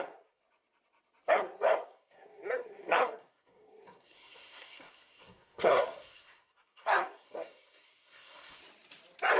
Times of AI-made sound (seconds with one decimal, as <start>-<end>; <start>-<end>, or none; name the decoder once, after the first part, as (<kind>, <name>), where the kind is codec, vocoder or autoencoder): 0.0-0.4 (codec, SNAC); 1.3-8.6